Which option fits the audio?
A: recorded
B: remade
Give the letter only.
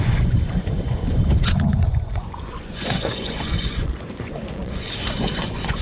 B